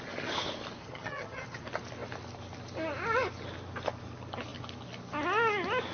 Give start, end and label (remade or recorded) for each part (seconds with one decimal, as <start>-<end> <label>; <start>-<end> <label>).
0.0-0.8 recorded; 0.8-1.6 remade; 1.6-5.9 recorded